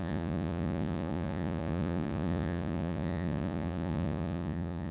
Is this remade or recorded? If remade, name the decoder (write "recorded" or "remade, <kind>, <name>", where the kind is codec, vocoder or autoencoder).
remade, vocoder, Vocos